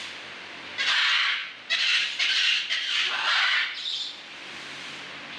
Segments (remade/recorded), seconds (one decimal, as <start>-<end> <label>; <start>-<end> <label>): 0.0-1.4 recorded; 1.4-4.5 remade; 4.5-5.4 recorded